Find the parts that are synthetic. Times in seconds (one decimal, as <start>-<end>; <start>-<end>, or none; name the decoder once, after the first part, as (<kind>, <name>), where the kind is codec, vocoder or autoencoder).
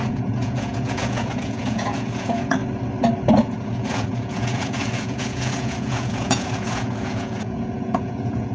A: 0.0-2.6 (vocoder, Vocos); 3.3-8.5